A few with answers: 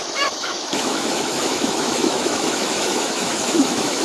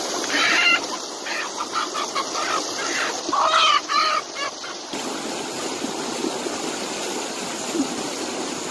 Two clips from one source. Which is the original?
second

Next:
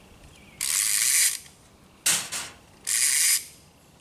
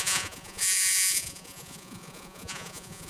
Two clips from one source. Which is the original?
first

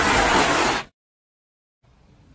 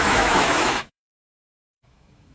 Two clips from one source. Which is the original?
first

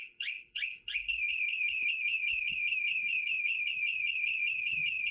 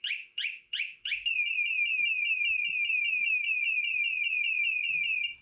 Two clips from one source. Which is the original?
second